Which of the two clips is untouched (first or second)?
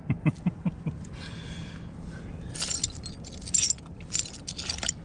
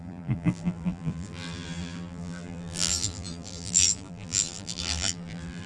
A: first